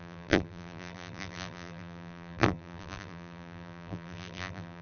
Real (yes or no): no